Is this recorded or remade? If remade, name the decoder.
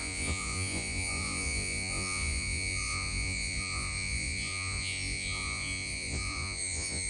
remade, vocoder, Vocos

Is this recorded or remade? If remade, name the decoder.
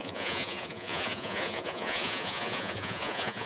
remade, vocoder, Vocos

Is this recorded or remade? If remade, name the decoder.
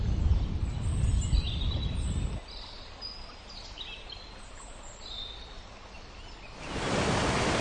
recorded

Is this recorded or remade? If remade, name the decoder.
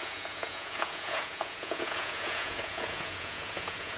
remade, vocoder, Vocos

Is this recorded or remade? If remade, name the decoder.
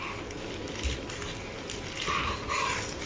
recorded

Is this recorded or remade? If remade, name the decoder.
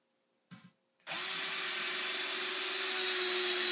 recorded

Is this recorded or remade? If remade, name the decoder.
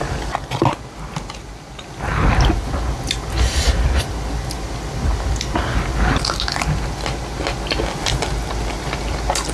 recorded